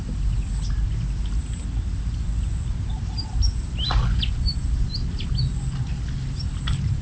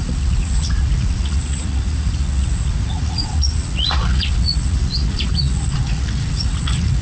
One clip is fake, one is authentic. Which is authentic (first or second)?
first